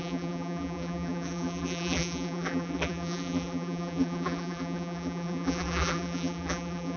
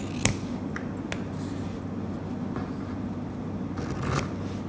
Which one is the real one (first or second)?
second